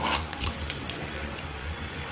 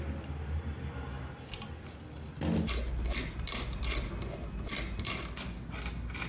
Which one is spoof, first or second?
first